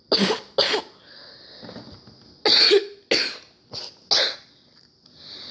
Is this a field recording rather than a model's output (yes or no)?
yes